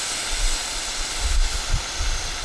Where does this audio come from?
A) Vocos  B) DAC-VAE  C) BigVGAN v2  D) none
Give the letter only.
D